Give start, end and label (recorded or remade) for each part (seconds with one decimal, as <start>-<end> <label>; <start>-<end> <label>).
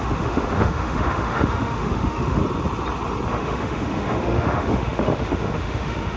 0.0-2.4 remade; 2.4-3.3 recorded; 3.3-6.2 remade